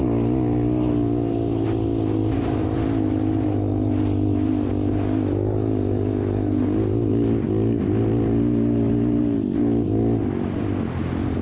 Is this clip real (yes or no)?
yes